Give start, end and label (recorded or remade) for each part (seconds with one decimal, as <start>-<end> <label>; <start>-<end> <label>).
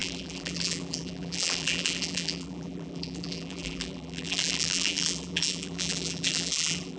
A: 0.0-7.0 remade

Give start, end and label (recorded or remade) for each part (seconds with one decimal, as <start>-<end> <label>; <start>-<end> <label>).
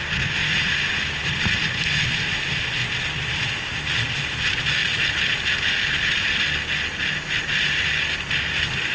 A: 0.0-0.4 recorded; 0.4-1.4 remade; 1.4-8.9 recorded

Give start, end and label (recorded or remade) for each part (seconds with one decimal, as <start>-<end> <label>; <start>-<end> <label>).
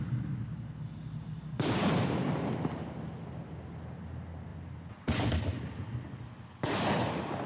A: 0.0-4.5 recorded; 4.5-5.3 remade; 5.3-7.5 recorded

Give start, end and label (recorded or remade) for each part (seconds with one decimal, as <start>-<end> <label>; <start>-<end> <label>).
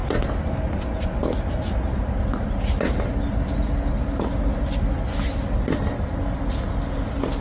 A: 0.0-7.4 recorded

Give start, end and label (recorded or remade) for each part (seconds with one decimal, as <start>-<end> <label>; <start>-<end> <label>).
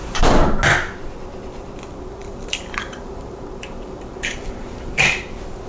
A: 0.0-2.2 recorded; 2.2-5.2 remade; 5.2-5.7 recorded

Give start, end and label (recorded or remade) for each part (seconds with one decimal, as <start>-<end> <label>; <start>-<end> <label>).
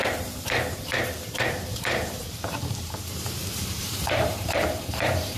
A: 0.0-5.4 remade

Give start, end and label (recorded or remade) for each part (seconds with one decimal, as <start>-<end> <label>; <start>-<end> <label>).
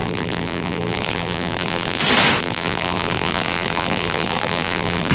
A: 0.0-2.0 remade; 2.0-2.4 recorded; 2.4-5.1 remade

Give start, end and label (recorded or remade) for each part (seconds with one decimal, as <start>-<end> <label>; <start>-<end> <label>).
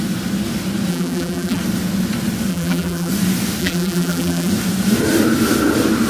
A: 0.0-0.9 recorded; 0.9-1.6 remade; 1.6-2.5 recorded; 2.5-3.1 remade; 3.1-3.6 recorded; 3.6-4.5 remade; 4.5-6.1 recorded